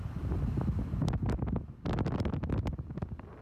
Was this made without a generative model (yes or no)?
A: yes